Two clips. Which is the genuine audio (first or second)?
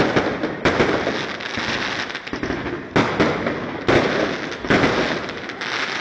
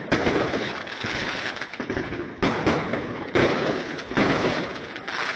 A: first